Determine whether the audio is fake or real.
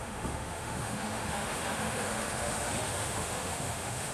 fake